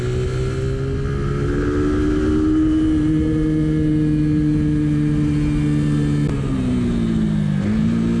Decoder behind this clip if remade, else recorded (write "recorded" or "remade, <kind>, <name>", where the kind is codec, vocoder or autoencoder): recorded